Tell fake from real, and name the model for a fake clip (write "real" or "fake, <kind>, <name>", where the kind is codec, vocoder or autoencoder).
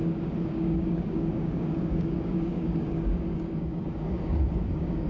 fake, codec, DAC